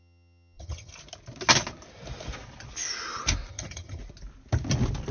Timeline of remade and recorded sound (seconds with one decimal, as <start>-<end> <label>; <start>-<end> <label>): 0.0-0.9 remade; 0.9-3.5 recorded; 3.5-4.0 remade; 4.0-5.1 recorded